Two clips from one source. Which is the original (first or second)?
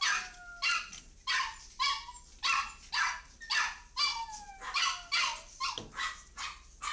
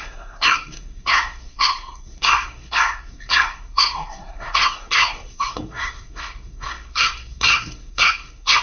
first